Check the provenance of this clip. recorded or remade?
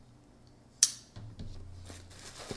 recorded